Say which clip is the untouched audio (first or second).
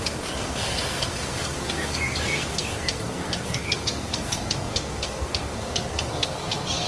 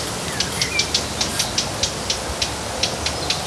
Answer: second